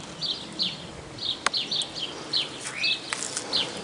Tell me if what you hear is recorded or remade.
recorded